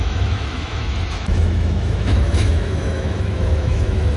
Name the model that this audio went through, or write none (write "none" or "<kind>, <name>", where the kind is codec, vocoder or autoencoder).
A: autoencoder, DAC-VAE